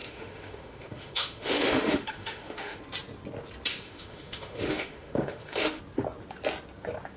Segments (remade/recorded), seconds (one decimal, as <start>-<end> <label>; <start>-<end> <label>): 0.0-2.8 remade; 2.8-3.7 recorded; 3.7-5.8 remade; 5.8-7.2 recorded